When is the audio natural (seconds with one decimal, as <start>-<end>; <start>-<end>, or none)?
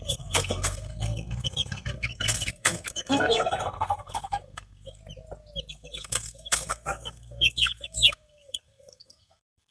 5.0-5.7